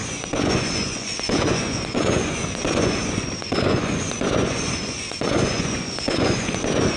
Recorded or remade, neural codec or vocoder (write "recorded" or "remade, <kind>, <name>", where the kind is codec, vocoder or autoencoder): remade, vocoder, Vocos